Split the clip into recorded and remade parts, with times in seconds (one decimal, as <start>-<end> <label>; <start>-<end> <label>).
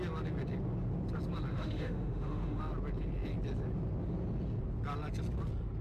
0.0-1.5 recorded; 1.5-2.6 remade; 2.6-5.8 recorded